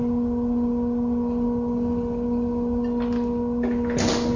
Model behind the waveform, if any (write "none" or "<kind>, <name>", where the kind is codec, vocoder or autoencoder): none